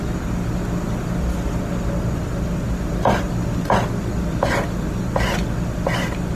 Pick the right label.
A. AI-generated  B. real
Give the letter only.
B